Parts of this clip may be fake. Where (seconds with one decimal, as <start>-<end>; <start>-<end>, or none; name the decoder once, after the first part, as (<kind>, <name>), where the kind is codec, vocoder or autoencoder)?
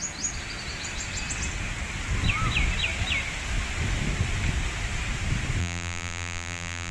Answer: 5.6-6.9 (vocoder, BigVGAN v2)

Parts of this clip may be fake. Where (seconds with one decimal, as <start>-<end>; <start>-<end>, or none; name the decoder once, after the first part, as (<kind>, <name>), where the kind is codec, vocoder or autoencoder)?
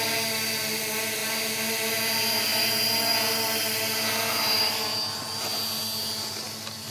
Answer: none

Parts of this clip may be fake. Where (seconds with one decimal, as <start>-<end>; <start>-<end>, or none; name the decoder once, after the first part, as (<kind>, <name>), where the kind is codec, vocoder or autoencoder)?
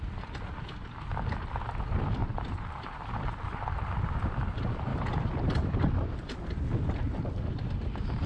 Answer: 2.2-3.7 (vocoder, BigVGAN v2); 4.9-5.9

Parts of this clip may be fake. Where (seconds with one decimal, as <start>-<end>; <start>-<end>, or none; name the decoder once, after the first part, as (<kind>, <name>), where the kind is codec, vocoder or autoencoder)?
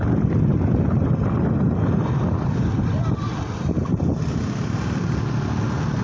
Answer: 3.3-4.2 (vocoder, BigVGAN v2)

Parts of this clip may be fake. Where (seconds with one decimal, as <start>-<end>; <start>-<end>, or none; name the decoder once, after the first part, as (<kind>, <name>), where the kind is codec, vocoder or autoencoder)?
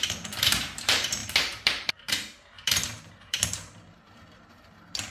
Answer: 0.0-5.1 (vocoder, BigVGAN v2)